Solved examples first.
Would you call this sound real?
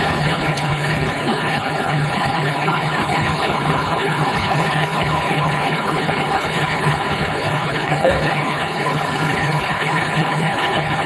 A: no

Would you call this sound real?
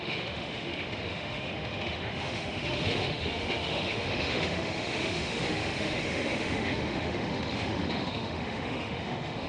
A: no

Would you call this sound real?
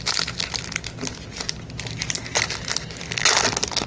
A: yes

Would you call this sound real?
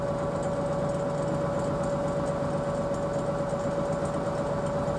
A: yes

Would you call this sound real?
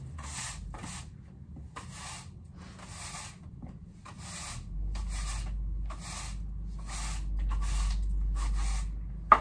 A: yes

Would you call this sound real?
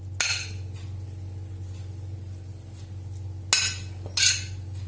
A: yes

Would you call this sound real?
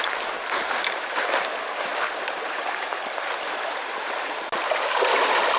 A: yes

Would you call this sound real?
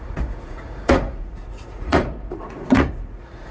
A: no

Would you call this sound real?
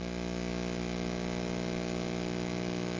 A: yes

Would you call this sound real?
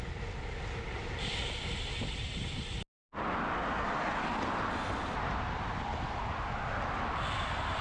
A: yes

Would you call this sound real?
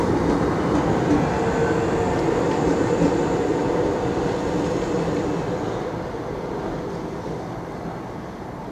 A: yes